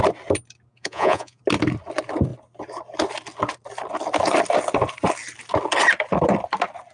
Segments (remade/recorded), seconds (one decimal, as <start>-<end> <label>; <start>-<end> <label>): 0.0-0.7 recorded; 0.7-1.4 remade; 1.4-6.9 recorded